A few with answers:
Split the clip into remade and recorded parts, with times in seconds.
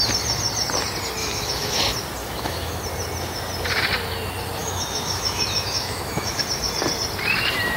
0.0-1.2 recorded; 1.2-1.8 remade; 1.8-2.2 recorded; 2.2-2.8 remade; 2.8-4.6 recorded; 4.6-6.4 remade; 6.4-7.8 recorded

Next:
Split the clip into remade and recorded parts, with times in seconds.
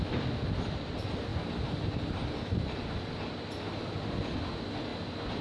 0.0-5.4 recorded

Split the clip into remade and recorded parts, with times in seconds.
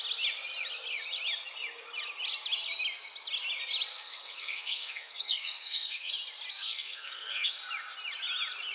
0.0-3.9 recorded; 3.9-6.1 remade; 6.1-6.5 recorded; 6.5-7.6 remade; 7.6-8.7 recorded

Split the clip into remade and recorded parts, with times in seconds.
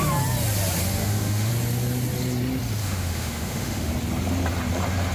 0.0-1.0 recorded; 1.0-1.5 remade; 1.5-2.8 recorded; 2.8-3.9 remade; 3.9-5.1 recorded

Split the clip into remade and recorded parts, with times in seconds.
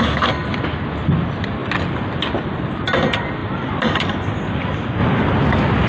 0.0-5.9 recorded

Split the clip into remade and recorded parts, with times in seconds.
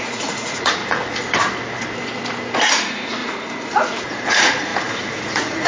0.0-0.8 remade; 0.8-2.7 recorded; 2.7-5.7 remade